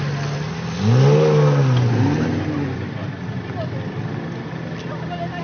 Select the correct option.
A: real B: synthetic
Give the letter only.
A